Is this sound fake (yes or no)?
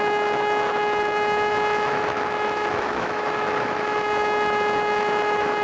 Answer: yes